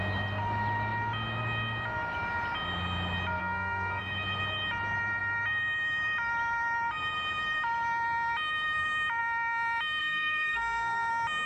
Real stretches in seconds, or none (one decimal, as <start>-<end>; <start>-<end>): 0.0-3.4; 4.0-10.0; 11.1-11.5